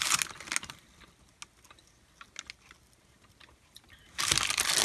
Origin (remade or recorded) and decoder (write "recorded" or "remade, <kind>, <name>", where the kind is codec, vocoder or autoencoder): recorded